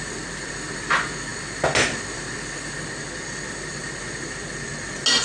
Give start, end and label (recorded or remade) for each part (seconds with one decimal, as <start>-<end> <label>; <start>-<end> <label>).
0.0-5.2 recorded